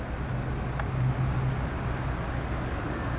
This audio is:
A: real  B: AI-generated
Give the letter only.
A